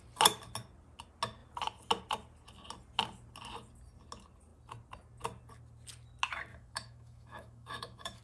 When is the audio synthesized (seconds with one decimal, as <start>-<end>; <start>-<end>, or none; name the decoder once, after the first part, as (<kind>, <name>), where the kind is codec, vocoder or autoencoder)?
6.5-8.2 (autoencoder, DAC-VAE)